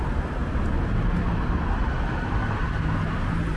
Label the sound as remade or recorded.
recorded